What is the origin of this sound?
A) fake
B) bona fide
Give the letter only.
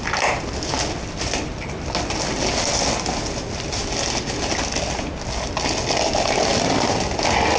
B